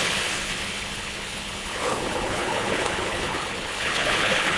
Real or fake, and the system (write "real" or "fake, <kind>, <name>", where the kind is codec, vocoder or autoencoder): fake, codec, HILCodec